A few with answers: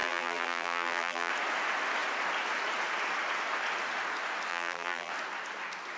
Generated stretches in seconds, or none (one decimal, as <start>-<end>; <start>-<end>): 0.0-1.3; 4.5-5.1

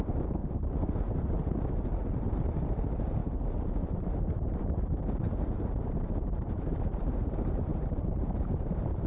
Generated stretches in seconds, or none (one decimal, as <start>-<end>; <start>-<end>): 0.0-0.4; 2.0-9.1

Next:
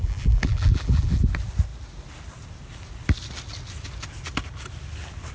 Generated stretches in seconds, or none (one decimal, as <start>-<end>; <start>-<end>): 0.0-1.2

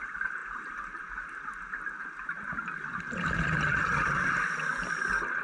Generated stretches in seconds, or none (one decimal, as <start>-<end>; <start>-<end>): none

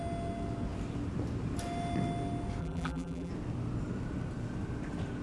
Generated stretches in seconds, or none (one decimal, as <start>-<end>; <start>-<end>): 2.6-3.3

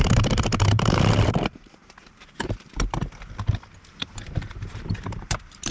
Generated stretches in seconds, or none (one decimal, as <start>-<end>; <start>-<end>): 0.0-3.0; 4.0-5.7